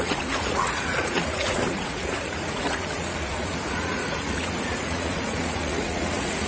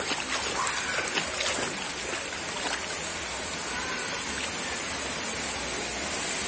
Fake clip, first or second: first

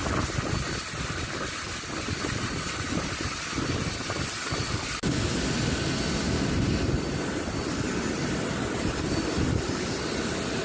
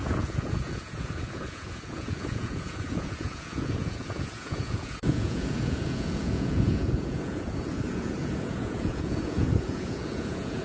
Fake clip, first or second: second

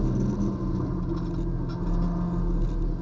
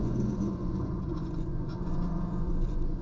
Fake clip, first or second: second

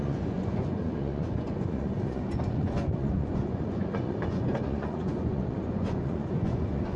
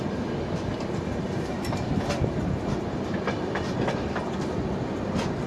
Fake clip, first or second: first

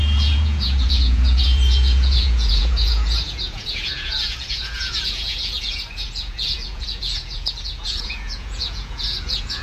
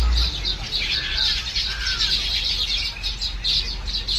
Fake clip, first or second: first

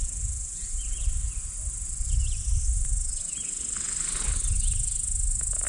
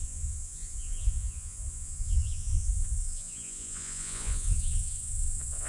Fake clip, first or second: second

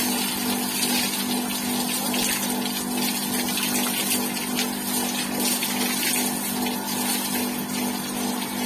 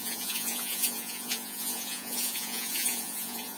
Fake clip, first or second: second